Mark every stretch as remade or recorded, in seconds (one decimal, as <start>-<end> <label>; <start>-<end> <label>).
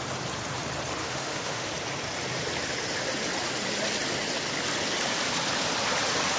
0.0-1.0 recorded; 1.0-1.7 remade; 1.7-6.4 recorded